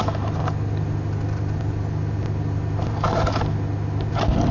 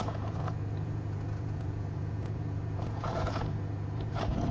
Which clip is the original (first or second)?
first